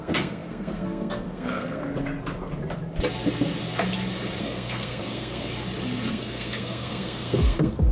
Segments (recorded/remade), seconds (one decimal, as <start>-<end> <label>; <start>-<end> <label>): 0.0-1.8 remade; 1.8-4.4 recorded; 4.4-5.5 remade; 5.5-6.1 recorded; 6.1-7.9 remade